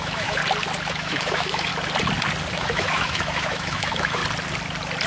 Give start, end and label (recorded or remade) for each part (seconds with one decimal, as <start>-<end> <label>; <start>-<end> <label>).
0.0-0.4 remade; 0.4-0.9 recorded; 0.9-1.7 remade; 1.7-2.5 recorded; 2.5-4.2 remade; 4.2-5.1 recorded